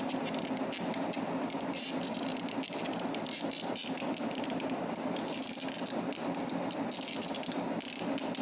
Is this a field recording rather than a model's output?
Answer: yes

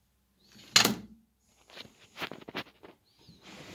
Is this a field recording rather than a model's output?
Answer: yes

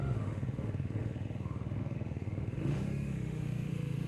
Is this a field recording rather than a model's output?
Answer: no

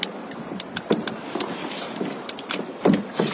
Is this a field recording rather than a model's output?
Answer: yes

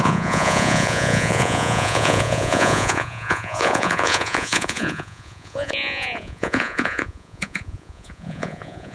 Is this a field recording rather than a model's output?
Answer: no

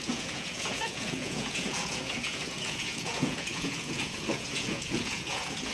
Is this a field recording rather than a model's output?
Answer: no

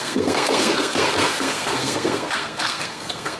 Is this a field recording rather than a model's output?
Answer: no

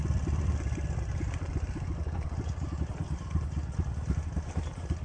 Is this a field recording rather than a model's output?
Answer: no